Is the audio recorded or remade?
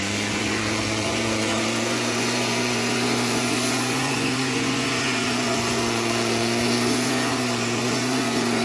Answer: remade